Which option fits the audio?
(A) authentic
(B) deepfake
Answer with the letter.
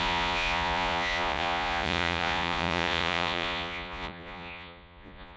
B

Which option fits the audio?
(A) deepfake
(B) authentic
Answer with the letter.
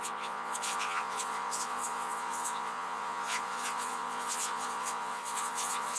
A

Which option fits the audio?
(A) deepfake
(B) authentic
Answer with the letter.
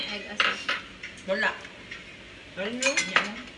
B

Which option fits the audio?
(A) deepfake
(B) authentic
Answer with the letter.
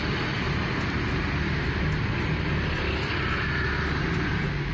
B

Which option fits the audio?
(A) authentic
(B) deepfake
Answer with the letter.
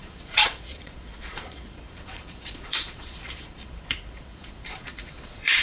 B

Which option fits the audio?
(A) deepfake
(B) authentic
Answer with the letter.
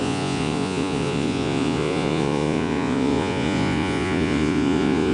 A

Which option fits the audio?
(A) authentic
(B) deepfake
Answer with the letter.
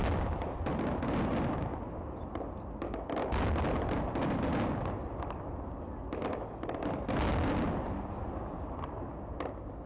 A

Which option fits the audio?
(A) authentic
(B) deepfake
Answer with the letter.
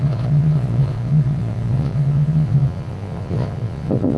B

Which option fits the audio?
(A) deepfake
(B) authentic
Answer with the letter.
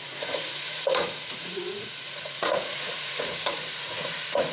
A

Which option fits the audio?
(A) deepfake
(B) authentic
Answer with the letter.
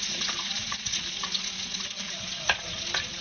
A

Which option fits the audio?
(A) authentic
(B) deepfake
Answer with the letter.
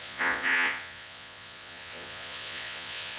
B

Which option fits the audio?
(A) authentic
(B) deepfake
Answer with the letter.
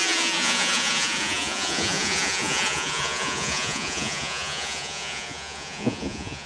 B